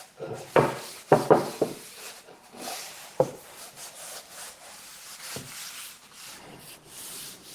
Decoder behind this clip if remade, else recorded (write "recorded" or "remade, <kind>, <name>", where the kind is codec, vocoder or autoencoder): remade, vocoder, BigVGAN v2